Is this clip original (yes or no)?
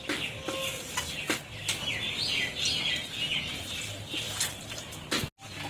yes